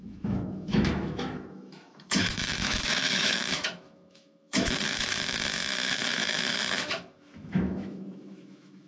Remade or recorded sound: remade